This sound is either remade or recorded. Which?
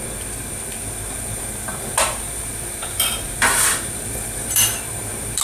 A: remade